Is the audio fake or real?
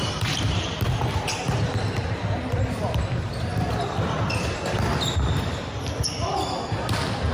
fake